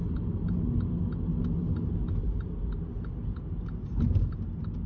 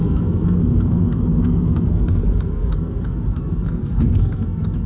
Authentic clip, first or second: first